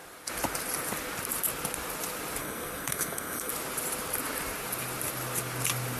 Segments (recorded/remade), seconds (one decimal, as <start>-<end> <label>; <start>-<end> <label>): 0.0-2.4 recorded; 2.4-3.5 remade; 3.5-6.0 recorded